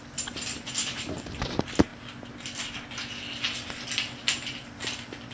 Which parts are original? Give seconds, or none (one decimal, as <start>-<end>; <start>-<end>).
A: 0.0-5.3